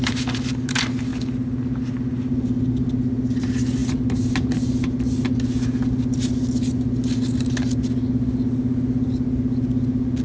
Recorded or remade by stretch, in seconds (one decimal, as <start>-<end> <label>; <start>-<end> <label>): 0.0-10.2 recorded